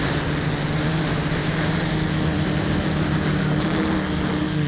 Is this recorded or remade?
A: recorded